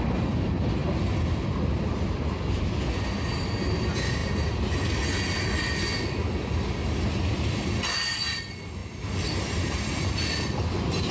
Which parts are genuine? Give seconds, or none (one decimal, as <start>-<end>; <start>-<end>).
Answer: 0.0-11.1